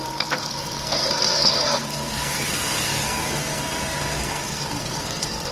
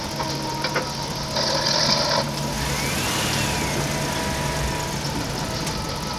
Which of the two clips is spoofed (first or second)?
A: first